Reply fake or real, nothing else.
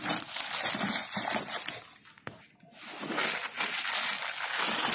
real